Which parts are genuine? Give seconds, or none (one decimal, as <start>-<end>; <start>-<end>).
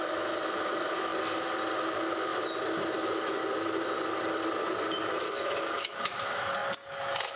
1.1-1.8; 2.3-3.0; 3.4-5.1